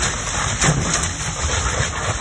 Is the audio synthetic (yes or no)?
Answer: no